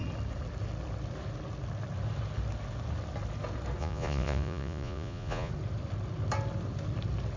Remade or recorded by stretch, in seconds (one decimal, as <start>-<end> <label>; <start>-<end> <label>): 0.0-3.8 recorded; 3.8-5.5 remade; 5.5-7.4 recorded

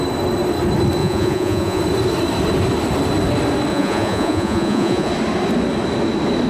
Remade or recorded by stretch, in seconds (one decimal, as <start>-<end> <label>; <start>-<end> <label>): 0.0-1.0 recorded; 1.0-1.8 remade; 1.8-3.7 recorded; 3.7-5.1 remade; 5.1-6.5 recorded

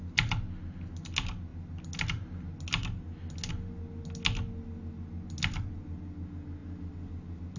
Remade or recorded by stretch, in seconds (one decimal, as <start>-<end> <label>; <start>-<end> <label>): 0.0-7.6 recorded

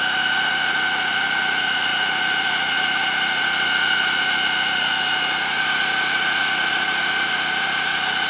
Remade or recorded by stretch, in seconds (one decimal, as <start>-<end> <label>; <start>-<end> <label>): 0.0-8.3 remade

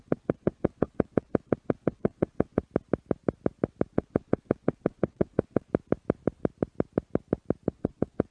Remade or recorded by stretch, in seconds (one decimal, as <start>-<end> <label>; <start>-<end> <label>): 0.0-2.6 remade; 2.6-3.9 recorded; 3.9-5.7 remade; 5.7-7.7 recorded; 7.7-8.3 remade

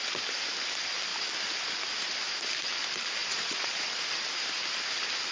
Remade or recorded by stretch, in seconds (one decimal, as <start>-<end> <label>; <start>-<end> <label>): 0.0-3.2 recorded; 3.2-3.8 remade; 3.8-5.3 recorded

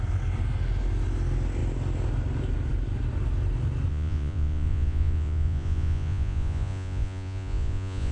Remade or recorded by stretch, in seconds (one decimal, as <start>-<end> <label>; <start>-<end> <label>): 0.0-3.9 recorded; 3.9-8.1 remade